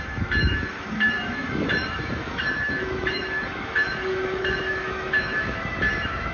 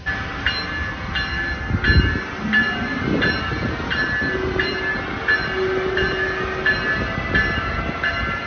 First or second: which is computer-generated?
first